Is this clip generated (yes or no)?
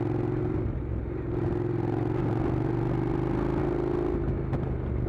no